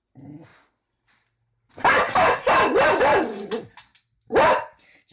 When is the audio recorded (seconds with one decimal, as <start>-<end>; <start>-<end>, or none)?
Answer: 0.0-5.1